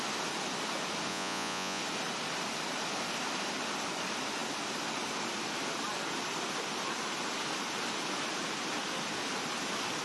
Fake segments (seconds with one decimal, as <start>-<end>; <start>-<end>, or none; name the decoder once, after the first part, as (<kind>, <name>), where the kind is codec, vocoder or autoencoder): 1.1-1.8 (vocoder, Vocos)

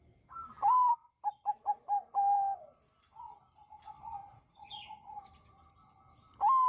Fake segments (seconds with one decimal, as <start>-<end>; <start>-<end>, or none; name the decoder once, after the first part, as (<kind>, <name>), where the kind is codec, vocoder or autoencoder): 4.2-5.2 (vocoder, Vocos)

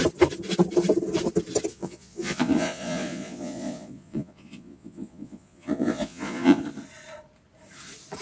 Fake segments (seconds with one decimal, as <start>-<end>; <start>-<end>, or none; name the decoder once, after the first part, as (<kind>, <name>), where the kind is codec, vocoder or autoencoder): 1.7-6.6 (vocoder, Vocos)

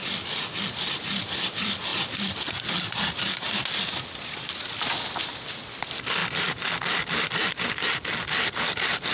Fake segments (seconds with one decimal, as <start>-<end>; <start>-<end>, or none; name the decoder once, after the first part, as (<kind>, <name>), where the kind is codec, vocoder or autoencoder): 0.0-0.5 (vocoder, BigVGAN v2); 1.9-3.0